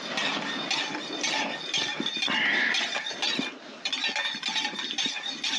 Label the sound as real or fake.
real